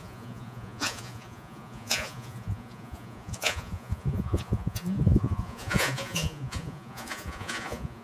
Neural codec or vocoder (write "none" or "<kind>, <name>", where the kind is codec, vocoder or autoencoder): vocoder, Vocos